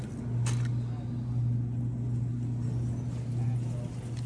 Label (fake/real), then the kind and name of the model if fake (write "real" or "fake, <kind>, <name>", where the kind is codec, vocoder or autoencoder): real